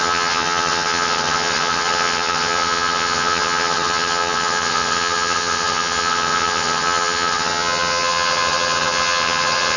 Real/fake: fake